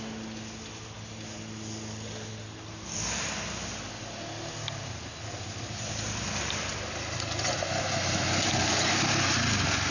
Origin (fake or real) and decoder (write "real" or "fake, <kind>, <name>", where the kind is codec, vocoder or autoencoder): real